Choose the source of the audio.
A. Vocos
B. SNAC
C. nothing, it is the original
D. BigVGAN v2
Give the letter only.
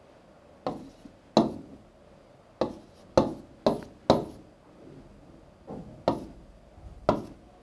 C